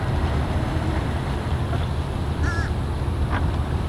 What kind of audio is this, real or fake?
real